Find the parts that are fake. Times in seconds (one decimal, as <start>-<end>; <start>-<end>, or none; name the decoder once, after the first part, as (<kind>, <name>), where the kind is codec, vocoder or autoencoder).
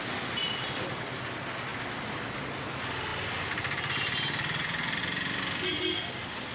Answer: 3.1-5.0 (vocoder, BigVGAN v2)